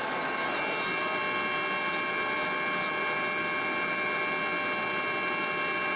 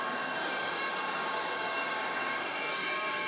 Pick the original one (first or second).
first